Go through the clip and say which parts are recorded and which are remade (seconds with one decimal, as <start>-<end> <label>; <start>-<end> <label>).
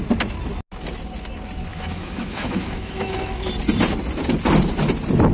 0.0-1.7 recorded; 1.7-3.5 remade; 3.5-5.3 recorded